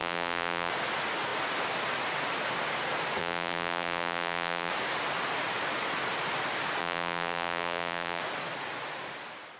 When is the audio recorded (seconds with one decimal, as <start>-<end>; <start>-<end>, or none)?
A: 0.7-3.2; 4.7-6.8; 8.2-9.6